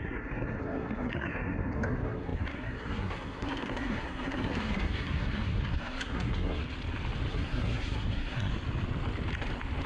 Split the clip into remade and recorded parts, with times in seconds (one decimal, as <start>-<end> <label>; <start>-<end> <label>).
0.0-6.6 remade; 6.6-7.3 recorded; 7.3-8.5 remade; 8.5-9.9 recorded